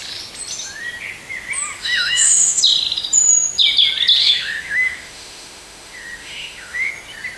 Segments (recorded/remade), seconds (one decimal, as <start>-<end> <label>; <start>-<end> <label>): 0.0-1.8 recorded; 1.8-2.6 remade; 2.6-4.2 recorded; 4.2-6.9 remade; 6.9-7.4 recorded